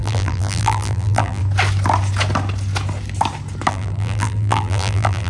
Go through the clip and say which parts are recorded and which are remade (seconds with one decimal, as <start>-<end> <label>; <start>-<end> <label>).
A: 0.0-1.4 remade; 1.4-3.7 recorded; 3.7-5.3 remade